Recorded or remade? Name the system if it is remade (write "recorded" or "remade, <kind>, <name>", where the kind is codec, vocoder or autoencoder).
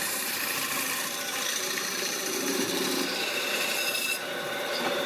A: remade, vocoder, BigVGAN v2